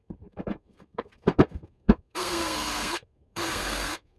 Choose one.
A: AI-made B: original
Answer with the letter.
A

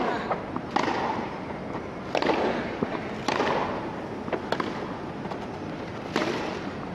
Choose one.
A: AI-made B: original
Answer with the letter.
B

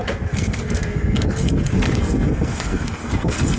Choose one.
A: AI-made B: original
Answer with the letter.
A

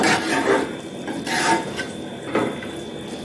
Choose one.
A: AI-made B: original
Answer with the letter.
B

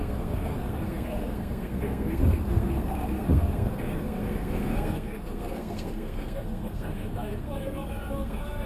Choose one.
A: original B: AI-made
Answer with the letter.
B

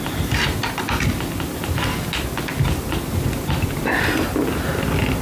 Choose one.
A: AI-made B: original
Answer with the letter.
B